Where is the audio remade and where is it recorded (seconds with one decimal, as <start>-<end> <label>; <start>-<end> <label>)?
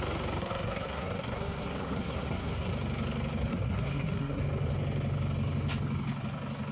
0.0-0.4 recorded; 0.4-2.7 remade; 2.7-3.5 recorded; 3.5-4.4 remade; 4.4-6.7 recorded